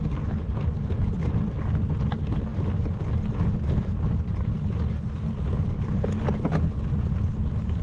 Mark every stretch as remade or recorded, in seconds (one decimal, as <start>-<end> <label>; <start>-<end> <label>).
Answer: 0.0-7.8 recorded